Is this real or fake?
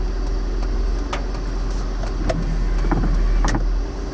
real